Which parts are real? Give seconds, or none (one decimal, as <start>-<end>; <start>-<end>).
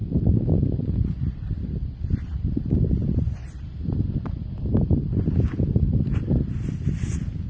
2.6-3.0; 3.6-7.5